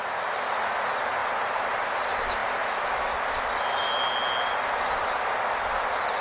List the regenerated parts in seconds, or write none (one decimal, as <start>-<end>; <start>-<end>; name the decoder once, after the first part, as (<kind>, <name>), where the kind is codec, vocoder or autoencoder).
1.2-1.7 (vocoder, BigVGAN v2)